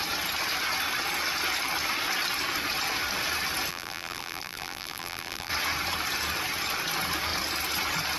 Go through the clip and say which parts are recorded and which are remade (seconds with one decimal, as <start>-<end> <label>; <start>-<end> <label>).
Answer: 0.0-3.7 recorded; 3.7-5.5 remade; 5.5-8.2 recorded